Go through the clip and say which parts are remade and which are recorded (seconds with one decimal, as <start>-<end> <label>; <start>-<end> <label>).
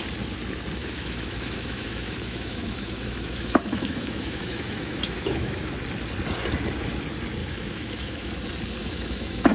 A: 0.0-0.8 recorded; 0.8-5.7 remade; 5.7-7.4 recorded; 7.4-8.3 remade; 8.3-8.8 recorded; 8.8-9.5 remade